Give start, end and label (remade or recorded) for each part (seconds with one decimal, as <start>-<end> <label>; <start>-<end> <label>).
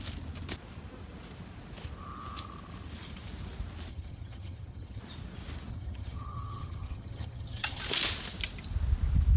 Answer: 0.0-3.9 recorded; 3.9-5.0 remade; 5.0-5.7 recorded; 5.7-7.8 remade; 7.8-9.4 recorded